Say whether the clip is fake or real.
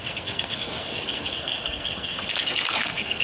fake